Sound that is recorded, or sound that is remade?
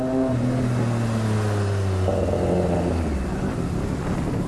recorded